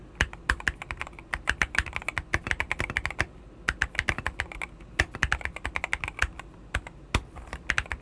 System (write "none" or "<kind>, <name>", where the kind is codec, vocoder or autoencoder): none